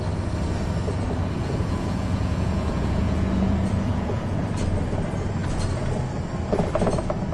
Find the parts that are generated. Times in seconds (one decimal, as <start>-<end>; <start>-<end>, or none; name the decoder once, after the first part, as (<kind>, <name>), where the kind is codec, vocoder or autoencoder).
1.4-4.4 (vocoder, Vocos)